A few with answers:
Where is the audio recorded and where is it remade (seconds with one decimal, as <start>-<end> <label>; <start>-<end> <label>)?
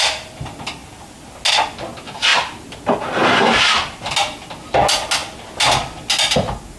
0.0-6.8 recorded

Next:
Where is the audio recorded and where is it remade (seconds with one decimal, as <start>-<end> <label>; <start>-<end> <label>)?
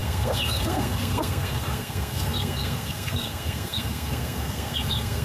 0.0-5.2 remade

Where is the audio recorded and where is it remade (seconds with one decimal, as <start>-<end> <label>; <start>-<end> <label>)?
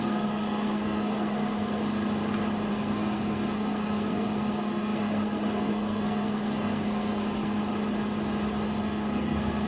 0.0-1.8 remade; 1.8-2.7 recorded; 2.7-7.6 remade; 7.6-8.8 recorded; 8.8-9.7 remade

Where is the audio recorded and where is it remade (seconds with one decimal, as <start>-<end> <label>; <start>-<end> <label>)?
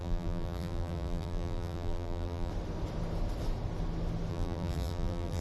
0.0-2.5 remade; 2.5-4.3 recorded; 4.3-5.4 remade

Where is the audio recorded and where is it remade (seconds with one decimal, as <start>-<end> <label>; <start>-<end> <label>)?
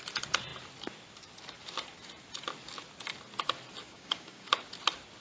0.0-3.8 recorded; 3.8-4.5 remade; 4.5-5.2 recorded